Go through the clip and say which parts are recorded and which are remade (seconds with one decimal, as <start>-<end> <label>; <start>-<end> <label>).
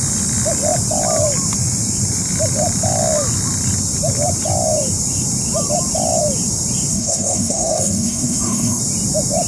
0.0-6.9 recorded; 6.9-8.8 remade; 8.8-9.5 recorded